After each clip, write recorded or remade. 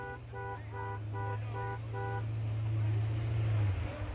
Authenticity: recorded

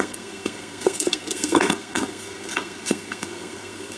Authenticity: remade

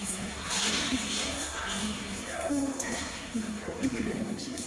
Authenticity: remade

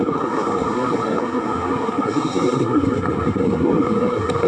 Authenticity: remade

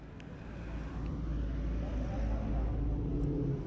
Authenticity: recorded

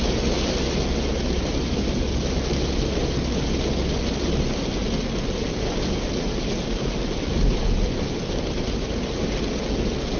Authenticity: recorded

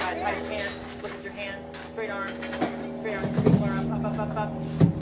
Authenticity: recorded